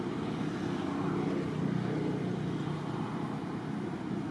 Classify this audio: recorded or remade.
recorded